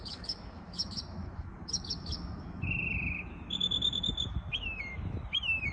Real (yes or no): no